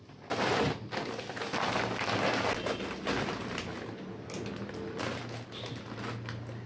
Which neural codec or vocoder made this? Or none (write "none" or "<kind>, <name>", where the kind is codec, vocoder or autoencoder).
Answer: none